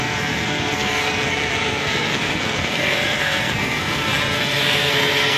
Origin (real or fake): fake